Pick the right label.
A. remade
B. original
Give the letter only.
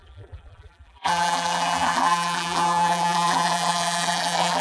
A